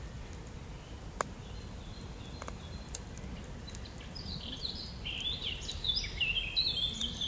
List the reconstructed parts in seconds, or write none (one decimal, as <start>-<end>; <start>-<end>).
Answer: none